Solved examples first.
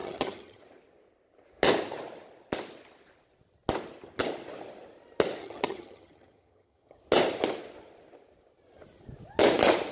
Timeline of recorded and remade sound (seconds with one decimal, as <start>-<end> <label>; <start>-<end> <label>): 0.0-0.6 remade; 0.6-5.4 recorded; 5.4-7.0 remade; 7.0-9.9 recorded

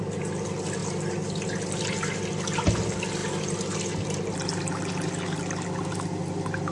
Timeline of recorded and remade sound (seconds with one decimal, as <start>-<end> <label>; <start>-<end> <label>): 0.0-6.7 recorded

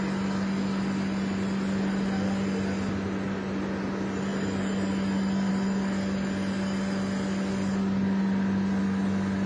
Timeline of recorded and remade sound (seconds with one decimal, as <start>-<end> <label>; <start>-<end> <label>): 0.0-9.5 recorded